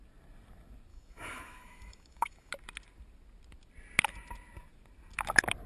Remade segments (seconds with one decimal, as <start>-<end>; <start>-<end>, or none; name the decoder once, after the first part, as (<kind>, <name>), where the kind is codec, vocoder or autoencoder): 0.9-2.5 (autoencoder, DAC-VAE)

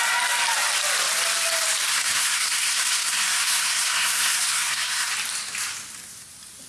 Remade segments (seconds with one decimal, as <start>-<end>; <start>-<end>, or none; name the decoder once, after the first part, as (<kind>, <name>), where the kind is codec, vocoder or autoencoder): 1.9-5.1 (codec, SNAC)

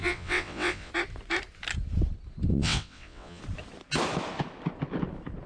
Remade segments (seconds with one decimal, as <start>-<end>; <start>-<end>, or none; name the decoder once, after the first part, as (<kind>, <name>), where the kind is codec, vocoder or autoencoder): 0.0-0.9 (vocoder, WaveNeXt); 2.5-3.4